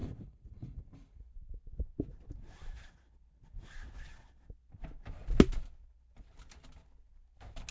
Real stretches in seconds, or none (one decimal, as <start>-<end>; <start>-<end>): 1.3-7.7